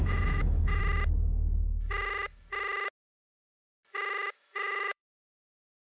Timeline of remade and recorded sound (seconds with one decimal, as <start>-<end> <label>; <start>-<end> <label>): 0.0-0.8 remade; 0.8-4.3 recorded; 4.3-5.9 remade